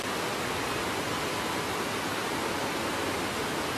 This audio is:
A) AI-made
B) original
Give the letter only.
B